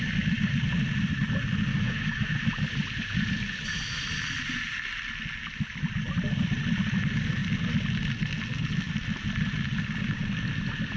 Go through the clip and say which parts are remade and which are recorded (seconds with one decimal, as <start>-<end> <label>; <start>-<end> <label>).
0.0-1.7 recorded; 1.7-2.3 remade; 2.3-11.0 recorded

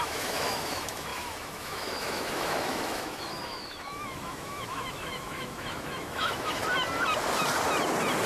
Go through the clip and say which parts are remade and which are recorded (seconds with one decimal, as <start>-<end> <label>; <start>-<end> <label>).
0.0-6.6 remade; 6.6-8.3 recorded

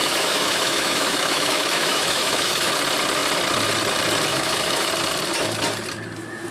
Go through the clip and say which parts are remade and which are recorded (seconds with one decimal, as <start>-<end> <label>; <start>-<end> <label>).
0.0-2.7 remade; 2.7-4.3 recorded; 4.3-4.9 remade; 4.9-6.5 recorded